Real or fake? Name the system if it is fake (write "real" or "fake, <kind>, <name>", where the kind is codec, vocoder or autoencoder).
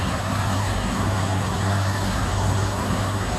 fake, codec, SNAC